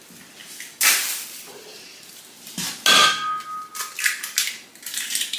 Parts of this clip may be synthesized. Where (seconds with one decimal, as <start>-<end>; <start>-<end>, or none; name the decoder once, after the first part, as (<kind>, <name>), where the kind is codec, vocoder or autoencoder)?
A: none